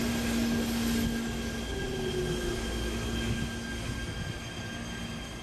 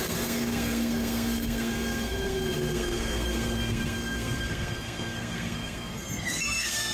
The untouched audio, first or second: first